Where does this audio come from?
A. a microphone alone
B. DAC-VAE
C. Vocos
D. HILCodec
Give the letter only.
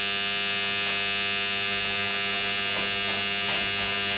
A